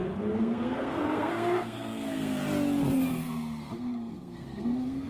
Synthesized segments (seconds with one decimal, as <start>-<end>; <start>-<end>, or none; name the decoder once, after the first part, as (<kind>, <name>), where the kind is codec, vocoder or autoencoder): 0.0-2.4 (codec, SNAC); 3.1-5.1